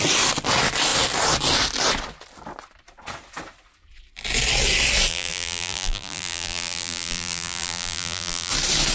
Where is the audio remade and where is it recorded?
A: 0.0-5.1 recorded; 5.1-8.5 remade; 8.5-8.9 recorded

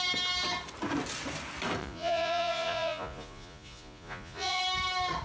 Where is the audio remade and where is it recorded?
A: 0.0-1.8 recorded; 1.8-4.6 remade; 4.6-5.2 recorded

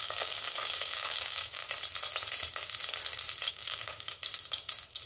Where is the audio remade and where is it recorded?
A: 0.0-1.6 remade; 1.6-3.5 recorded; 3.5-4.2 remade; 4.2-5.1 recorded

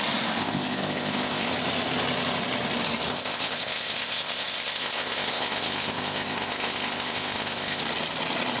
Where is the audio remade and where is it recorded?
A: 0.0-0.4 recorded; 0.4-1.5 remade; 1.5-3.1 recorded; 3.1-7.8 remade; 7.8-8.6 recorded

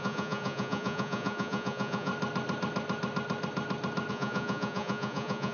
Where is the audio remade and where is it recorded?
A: 0.0-2.1 remade; 2.1-4.1 recorded; 4.1-5.5 remade

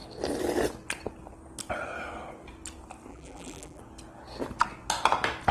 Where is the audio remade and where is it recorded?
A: 0.0-3.1 recorded; 3.1-3.8 remade; 3.8-5.5 recorded